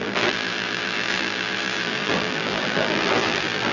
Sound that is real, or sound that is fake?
fake